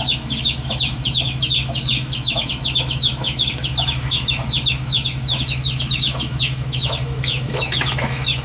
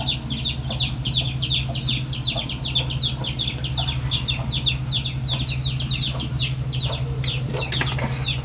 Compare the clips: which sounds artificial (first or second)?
first